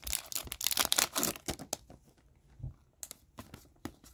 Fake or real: real